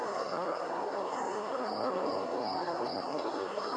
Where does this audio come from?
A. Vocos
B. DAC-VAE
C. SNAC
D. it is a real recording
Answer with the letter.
C